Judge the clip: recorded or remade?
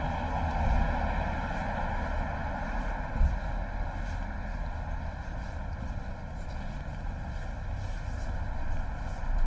recorded